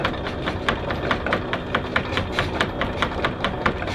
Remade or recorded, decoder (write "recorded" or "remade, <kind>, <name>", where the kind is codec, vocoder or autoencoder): recorded